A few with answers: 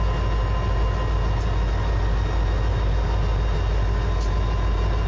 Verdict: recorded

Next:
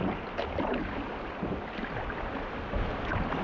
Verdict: recorded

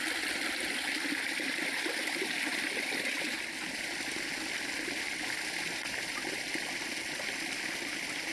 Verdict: recorded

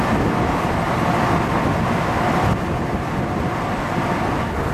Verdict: recorded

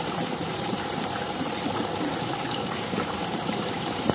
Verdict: remade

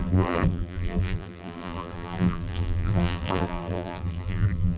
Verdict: remade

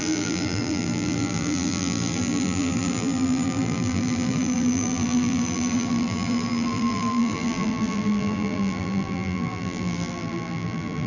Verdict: remade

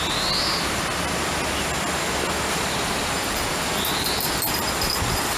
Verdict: recorded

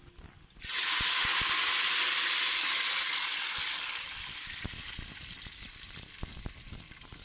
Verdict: recorded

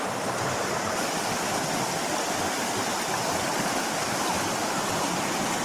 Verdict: recorded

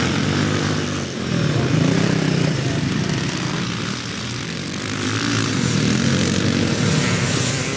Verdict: remade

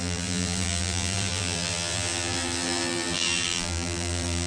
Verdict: remade